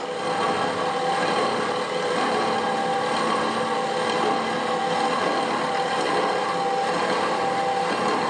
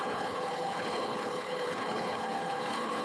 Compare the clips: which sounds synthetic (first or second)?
second